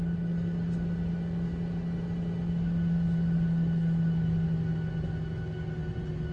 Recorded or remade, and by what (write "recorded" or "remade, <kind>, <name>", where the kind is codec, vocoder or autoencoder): recorded